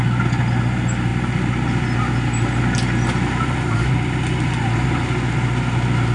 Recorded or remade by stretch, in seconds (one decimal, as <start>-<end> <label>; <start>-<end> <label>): 0.0-6.1 recorded